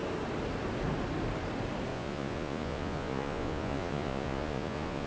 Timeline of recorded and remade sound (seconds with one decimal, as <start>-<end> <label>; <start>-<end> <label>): 0.0-1.9 recorded; 1.9-5.1 remade